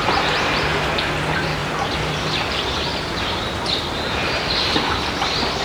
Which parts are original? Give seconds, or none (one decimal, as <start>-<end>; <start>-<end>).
0.7-1.2; 1.6-2.2; 2.9-5.1